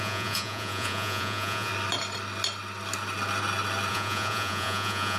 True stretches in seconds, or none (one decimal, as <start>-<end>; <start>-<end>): 1.7-3.9